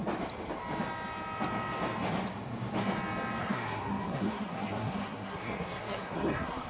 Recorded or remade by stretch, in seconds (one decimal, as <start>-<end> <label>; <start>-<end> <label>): 0.0-3.4 recorded; 3.4-6.7 remade